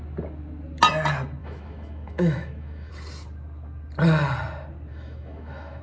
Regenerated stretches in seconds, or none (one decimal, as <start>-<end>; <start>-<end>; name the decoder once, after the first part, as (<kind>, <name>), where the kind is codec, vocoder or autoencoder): 1.4-2.9 (autoencoder, DAC-VAE); 4.9-5.8